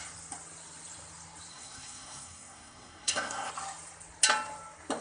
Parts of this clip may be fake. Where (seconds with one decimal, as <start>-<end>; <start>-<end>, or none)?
1.5-3.5

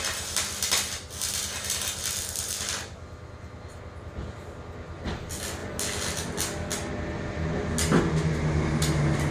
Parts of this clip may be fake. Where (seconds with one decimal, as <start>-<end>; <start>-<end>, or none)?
none

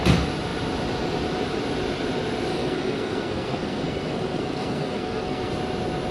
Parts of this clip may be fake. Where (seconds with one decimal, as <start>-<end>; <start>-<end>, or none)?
2.5-5.5

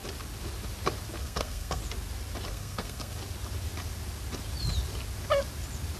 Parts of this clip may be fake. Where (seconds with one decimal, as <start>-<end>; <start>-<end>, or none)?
1.2-1.8; 2.5-3.2

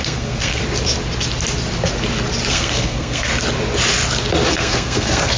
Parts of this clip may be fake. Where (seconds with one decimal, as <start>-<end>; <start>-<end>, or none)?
0.0-0.6; 2.5-3.3; 4.5-5.4

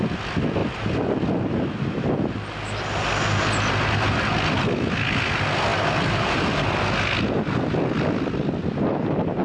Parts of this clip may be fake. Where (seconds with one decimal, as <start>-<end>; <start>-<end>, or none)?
none

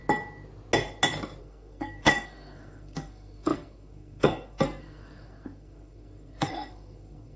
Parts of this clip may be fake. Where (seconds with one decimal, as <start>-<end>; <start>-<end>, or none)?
1.4-7.4

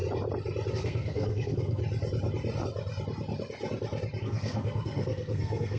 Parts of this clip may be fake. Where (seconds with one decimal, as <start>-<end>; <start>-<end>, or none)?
0.7-1.8; 4.2-5.8